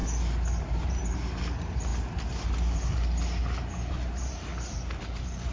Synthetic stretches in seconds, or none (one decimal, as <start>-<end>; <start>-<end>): 0.6-1.9; 3.9-4.5; 5.0-5.5

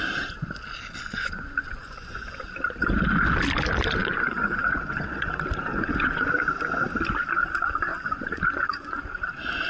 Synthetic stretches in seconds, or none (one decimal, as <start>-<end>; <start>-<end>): 1.1-2.4; 4.0-5.3; 5.7-6.4; 7.9-9.0

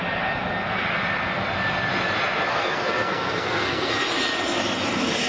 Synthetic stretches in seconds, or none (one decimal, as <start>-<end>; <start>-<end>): 2.5-3.9

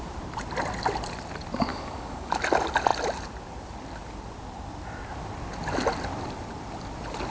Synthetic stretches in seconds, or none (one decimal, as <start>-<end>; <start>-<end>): 1.7-2.3

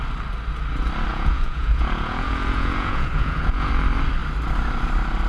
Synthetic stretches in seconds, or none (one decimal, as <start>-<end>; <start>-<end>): 1.1-3.7